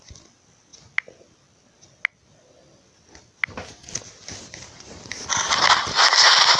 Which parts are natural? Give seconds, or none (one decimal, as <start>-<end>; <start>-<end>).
0.0-6.6